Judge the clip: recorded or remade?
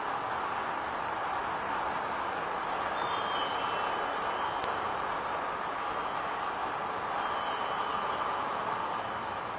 recorded